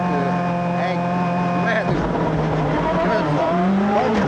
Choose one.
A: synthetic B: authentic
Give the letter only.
B